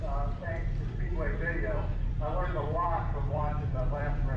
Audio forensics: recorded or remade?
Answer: remade